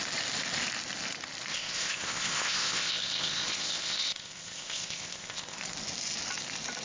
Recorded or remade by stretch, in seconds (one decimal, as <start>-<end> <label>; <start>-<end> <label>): 0.0-1.5 recorded; 1.5-5.6 remade; 5.6-6.8 recorded